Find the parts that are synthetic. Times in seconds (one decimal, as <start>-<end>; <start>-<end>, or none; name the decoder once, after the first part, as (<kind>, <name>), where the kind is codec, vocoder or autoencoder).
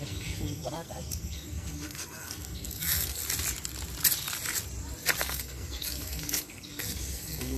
0.0-3.2 (codec, SNAC); 5.2-7.6